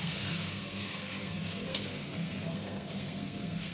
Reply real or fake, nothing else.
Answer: fake